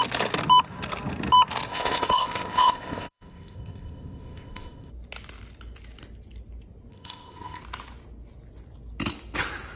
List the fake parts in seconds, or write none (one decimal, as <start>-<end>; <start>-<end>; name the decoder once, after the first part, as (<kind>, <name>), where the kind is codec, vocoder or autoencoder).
1.7-4.9 (codec, ZipCodec); 6.9-7.6